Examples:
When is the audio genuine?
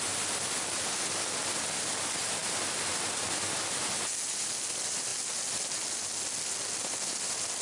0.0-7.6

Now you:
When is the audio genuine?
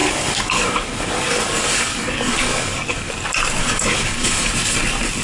3.1-3.6; 4.5-5.2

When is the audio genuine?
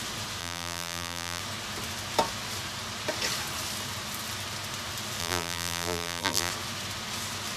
0.0-0.4; 1.4-5.2; 6.5-7.6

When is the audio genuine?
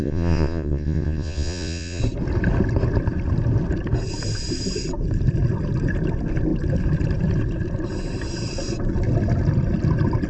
2.0-10.3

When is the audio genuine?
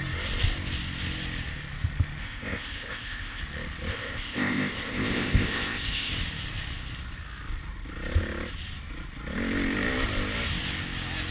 0.0-2.2; 3.4-3.9; 6.1-11.3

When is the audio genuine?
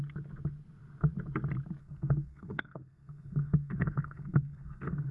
0.0-1.8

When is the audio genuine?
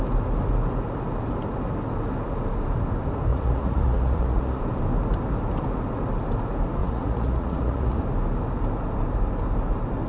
0.0-3.3; 4.6-6.8; 8.0-10.1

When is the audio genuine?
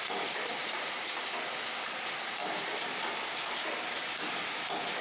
0.0-0.6; 1.2-2.4; 3.0-5.0